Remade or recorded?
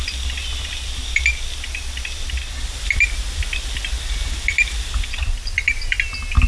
recorded